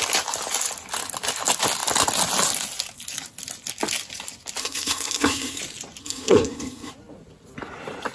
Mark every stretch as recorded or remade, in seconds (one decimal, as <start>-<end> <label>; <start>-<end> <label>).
0.0-4.6 recorded; 4.6-5.6 remade; 5.6-6.0 recorded; 6.0-6.9 remade; 6.9-8.1 recorded